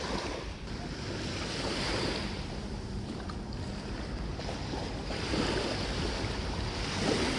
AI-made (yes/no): yes